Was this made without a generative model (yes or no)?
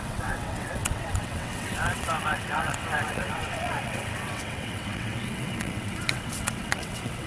no